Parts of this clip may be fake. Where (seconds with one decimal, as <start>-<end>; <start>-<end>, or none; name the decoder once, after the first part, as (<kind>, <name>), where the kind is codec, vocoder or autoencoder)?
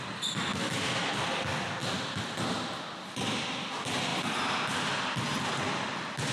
none